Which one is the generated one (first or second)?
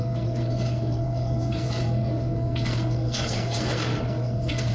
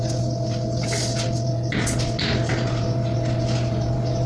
first